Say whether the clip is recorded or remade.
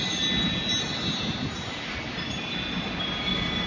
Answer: recorded